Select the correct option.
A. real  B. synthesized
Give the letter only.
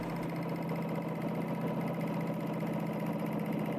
A